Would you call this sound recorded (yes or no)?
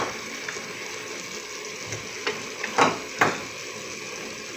yes